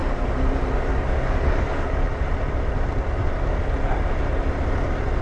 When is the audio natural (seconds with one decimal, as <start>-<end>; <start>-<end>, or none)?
0.0-1.2; 2.1-5.2